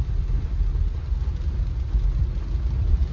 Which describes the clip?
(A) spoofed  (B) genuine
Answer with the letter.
B